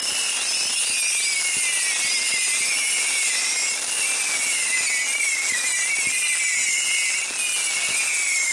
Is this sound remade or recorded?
recorded